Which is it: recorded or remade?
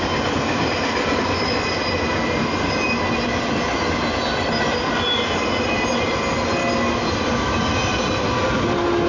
recorded